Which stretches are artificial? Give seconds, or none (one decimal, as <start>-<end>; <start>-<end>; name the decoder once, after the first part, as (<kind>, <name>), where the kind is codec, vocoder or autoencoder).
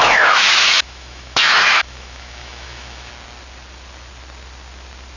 0.0-3.1 (autoencoder, DAC-VAE)